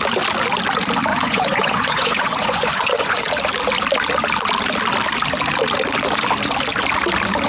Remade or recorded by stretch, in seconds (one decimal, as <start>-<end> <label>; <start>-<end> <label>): 0.0-1.1 recorded; 1.1-3.3 remade; 3.3-7.5 recorded